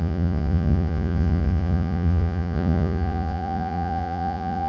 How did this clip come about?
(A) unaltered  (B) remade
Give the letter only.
B